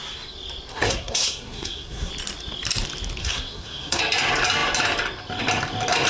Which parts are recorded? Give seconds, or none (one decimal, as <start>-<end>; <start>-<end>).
0.0-0.7; 2.1-3.2; 4.0-6.1